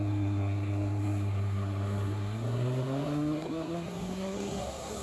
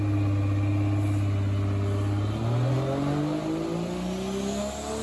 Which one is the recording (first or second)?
second